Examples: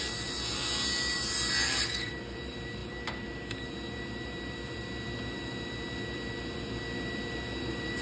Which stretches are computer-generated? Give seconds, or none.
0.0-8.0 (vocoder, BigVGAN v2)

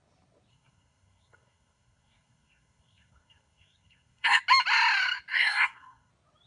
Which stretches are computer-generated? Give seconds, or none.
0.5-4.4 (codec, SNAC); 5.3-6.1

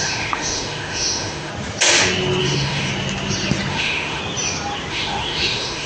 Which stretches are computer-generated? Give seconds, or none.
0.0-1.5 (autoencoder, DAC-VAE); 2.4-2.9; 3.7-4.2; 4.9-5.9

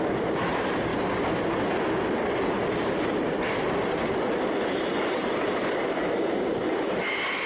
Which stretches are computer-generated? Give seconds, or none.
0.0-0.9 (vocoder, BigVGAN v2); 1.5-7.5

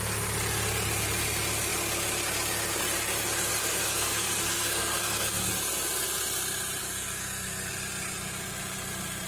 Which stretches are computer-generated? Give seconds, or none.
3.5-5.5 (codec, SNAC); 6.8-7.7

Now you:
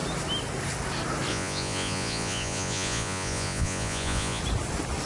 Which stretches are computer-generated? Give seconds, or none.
1.3-4.4 (vocoder, Vocos)

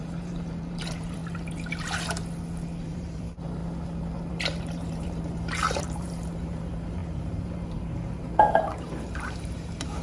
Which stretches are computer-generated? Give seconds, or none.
0.0-1.2 (vocoder, BigVGAN v2); 2.8-3.6; 4.3-10.0

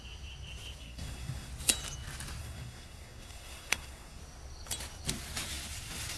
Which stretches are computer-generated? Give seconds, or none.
0.8-1.5 (codec, SNAC); 2.4-4.2